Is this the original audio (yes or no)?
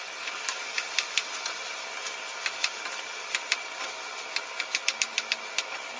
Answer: yes